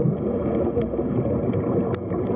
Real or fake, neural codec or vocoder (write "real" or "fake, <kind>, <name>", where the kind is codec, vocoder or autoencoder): real